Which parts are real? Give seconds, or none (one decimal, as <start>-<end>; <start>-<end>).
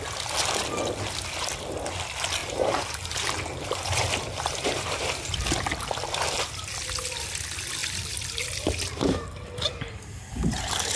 0.0-2.4; 5.4-11.0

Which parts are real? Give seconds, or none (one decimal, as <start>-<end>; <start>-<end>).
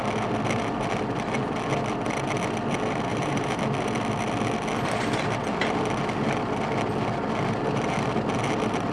0.0-3.1; 3.6-8.9